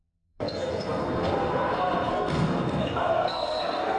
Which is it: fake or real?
fake